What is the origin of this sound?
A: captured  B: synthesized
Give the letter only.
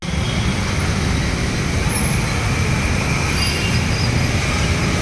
A